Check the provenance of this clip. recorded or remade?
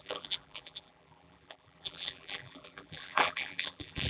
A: remade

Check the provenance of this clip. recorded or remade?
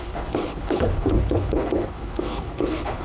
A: remade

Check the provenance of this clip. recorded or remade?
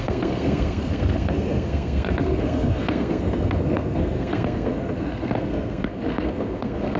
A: remade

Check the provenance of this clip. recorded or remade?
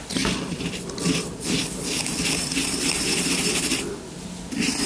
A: remade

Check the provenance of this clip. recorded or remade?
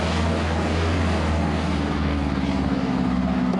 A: remade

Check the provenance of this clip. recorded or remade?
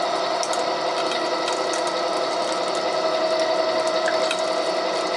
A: recorded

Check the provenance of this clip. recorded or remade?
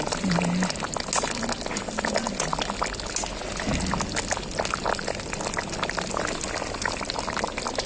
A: recorded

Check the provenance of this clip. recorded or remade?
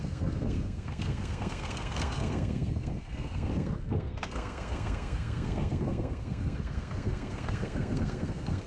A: remade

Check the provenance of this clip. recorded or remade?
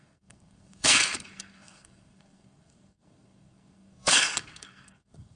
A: remade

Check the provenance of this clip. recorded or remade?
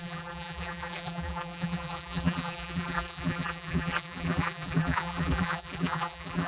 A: remade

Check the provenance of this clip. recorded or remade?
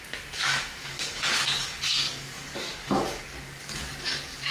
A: remade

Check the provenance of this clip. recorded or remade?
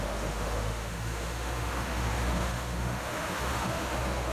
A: remade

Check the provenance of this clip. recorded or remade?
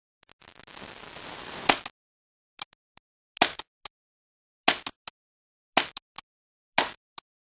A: recorded